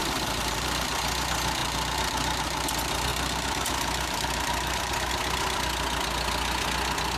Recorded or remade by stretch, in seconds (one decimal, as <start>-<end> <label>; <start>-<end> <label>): 0.0-1.0 remade; 1.0-1.6 recorded; 1.6-2.7 remade; 2.7-3.1 recorded; 3.1-5.1 remade; 5.1-7.2 recorded